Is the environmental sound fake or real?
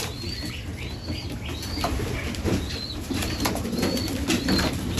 real